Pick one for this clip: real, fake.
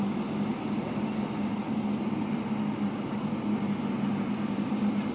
real